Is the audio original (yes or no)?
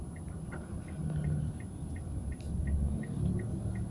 yes